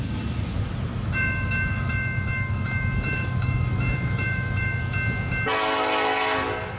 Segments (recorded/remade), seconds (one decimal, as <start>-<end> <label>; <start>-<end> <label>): 0.0-0.9 recorded; 0.9-4.8 remade; 4.8-6.8 recorded